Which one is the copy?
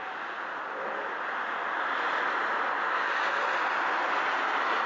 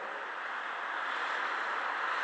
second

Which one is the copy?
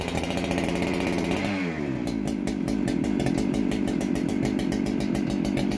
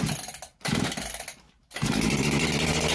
first